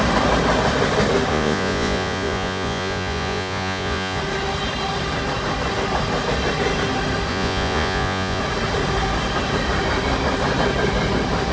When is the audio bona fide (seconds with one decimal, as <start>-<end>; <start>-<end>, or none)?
0.0-1.3; 4.2-7.3; 8.4-11.5